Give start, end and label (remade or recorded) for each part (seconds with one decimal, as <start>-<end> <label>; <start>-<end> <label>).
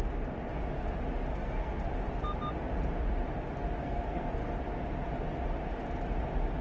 0.0-1.3 recorded; 1.3-1.9 remade; 1.9-3.8 recorded; 3.8-4.4 remade; 4.4-6.6 recorded